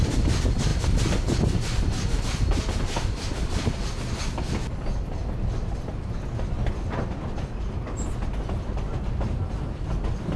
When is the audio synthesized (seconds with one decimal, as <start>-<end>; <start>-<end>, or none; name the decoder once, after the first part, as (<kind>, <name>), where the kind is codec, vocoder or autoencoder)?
none